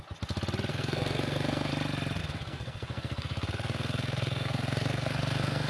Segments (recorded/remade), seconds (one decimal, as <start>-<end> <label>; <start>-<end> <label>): 0.0-0.7 recorded; 0.7-1.7 remade; 1.7-2.2 recorded; 2.2-5.7 remade